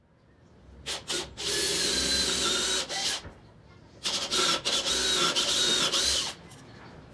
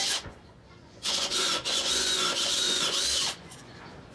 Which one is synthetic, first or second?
second